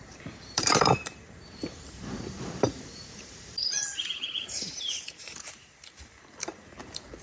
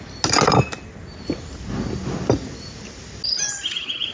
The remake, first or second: first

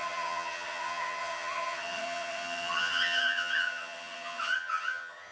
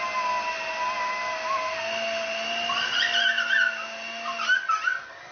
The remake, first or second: first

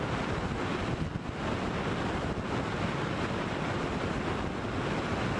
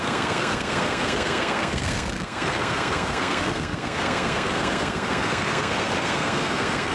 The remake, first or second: second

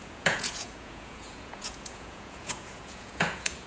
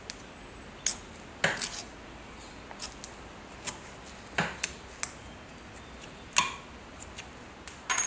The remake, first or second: first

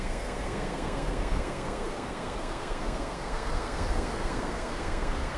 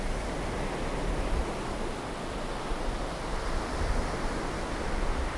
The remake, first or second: first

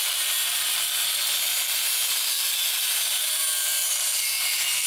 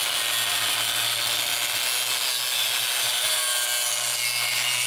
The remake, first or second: first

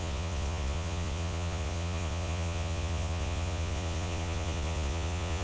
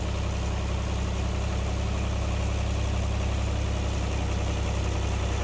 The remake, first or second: first